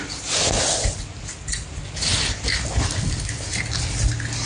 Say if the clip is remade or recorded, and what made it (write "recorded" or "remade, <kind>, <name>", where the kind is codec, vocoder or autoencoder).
recorded